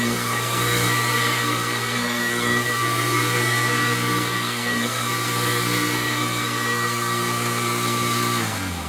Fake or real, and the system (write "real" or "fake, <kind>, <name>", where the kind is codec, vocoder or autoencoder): fake, codec, SNAC